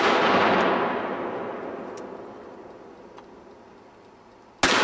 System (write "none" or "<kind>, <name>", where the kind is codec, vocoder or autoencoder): none